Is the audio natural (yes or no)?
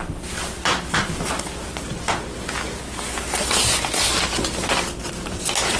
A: yes